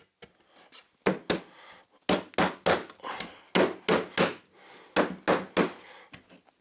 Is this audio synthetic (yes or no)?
no